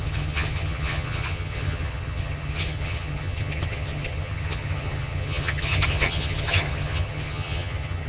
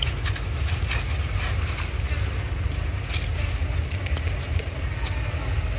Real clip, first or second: second